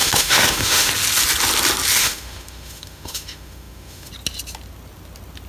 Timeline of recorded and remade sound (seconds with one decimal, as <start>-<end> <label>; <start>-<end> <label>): 0.0-0.9 remade; 0.9-2.0 recorded; 2.0-4.1 remade; 4.1-5.5 recorded